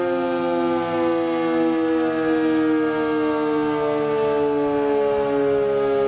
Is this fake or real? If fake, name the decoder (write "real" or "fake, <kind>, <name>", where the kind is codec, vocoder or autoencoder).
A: real